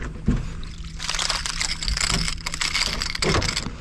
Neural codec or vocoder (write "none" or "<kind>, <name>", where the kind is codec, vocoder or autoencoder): none